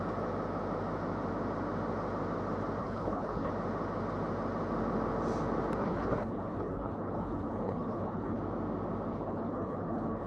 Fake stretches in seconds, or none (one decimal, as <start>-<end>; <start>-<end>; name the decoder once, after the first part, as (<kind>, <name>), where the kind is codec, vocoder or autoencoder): 2.8-3.5 (codec, HILCodec); 5.8-8.4; 9.1-10.3